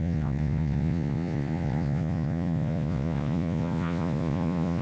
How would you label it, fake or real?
fake